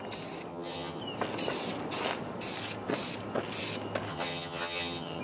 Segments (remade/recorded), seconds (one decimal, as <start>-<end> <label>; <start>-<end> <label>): 0.0-0.5 recorded; 0.5-1.0 remade; 1.0-4.1 recorded; 4.1-5.2 remade